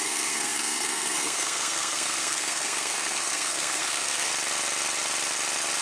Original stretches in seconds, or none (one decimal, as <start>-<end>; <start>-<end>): 4.3-5.8

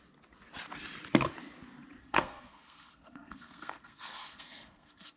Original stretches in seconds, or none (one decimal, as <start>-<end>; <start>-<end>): 0.0-2.0

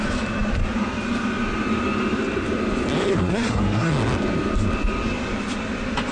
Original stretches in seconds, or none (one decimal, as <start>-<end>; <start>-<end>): 0.0-3.2; 3.9-6.1

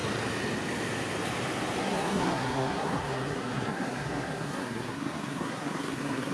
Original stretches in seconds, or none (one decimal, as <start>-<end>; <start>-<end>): 0.0-1.8

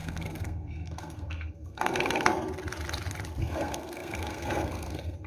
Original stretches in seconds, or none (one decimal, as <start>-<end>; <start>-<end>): 2.3-3.4